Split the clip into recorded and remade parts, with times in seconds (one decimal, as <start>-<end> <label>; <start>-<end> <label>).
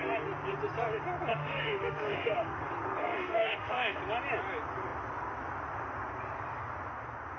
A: 0.0-1.3 recorded; 1.3-2.6 remade; 2.6-3.0 recorded; 3.0-4.0 remade; 4.0-7.4 recorded